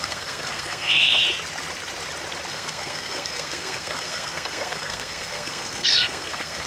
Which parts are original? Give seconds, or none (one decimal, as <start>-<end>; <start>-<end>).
1.2-2.5

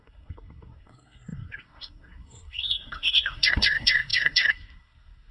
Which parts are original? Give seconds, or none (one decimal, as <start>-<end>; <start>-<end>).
none

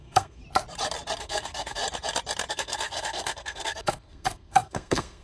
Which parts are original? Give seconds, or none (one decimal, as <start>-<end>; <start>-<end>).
0.4-1.2; 1.8-2.5

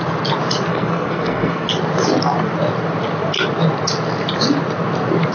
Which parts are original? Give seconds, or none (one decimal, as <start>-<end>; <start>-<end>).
0.0-0.7; 1.7-5.3

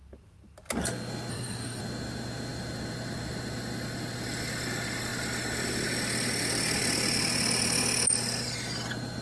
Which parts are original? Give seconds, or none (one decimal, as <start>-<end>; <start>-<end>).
0.0-1.3; 1.8-9.2